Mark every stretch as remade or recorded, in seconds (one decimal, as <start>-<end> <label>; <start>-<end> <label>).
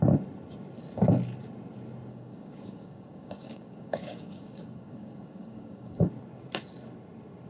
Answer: 0.0-2.1 recorded; 2.1-6.1 remade; 6.1-7.5 recorded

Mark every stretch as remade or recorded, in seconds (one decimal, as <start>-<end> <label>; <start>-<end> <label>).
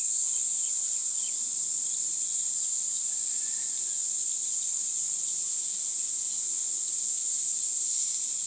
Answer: 0.0-1.5 recorded; 1.5-2.1 remade; 2.1-8.5 recorded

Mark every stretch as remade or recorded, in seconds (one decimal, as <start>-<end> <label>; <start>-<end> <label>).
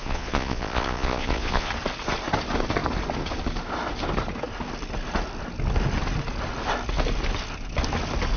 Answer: 0.0-1.7 remade; 1.7-8.4 recorded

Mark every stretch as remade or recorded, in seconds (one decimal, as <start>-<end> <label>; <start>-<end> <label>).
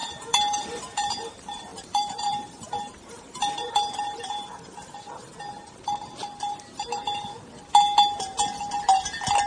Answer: 0.0-1.1 remade; 1.1-1.7 recorded; 1.7-5.4 remade; 5.4-9.5 recorded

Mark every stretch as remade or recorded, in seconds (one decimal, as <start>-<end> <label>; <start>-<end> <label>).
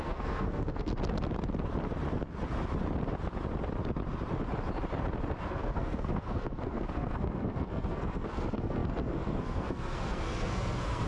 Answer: 0.0-0.9 remade; 0.9-5.4 recorded; 5.4-11.1 remade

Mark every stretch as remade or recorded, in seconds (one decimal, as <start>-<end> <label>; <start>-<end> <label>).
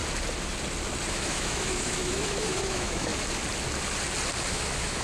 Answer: 0.0-1.1 recorded; 1.1-3.1 remade; 3.1-4.5 recorded; 4.5-5.0 remade